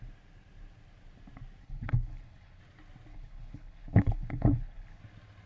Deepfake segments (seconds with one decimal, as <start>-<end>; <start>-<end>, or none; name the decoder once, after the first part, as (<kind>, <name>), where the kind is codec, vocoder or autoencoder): 1.6-2.6 (codec, HILCodec); 3.1-5.0